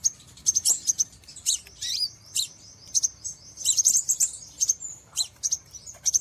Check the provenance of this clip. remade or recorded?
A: remade